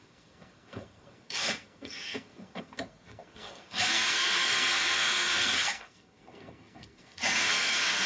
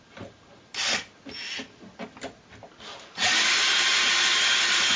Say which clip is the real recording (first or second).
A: second